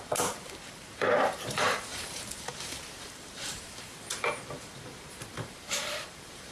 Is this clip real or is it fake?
fake